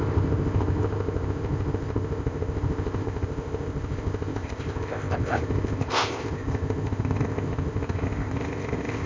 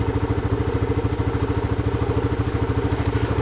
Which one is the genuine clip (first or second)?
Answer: second